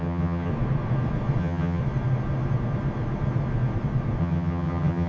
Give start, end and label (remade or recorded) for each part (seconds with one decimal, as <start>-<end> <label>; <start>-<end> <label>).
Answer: 0.0-0.5 remade; 0.5-1.4 recorded; 1.4-1.8 remade; 1.8-4.2 recorded; 4.2-5.1 remade